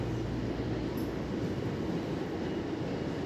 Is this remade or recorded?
recorded